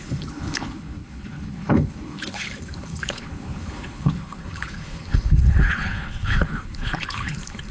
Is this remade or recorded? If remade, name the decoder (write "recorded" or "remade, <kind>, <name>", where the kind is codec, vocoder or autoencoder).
remade, codec, HILCodec